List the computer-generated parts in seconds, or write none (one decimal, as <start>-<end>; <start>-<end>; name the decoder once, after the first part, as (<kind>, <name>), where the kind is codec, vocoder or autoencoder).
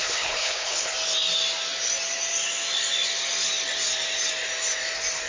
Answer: 0.0-0.9 (codec, HILCodec)